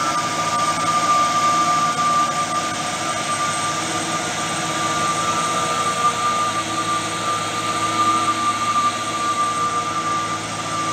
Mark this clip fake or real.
real